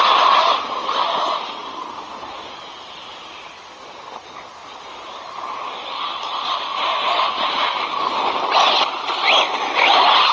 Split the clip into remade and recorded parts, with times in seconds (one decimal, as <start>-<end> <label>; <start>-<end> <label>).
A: 0.0-1.6 recorded; 1.6-2.1 remade; 2.1-4.6 recorded; 4.6-7.2 remade; 7.2-10.3 recorded